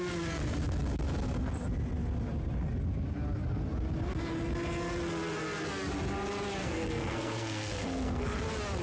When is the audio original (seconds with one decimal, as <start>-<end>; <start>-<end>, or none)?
0.0-6.6; 8.4-8.8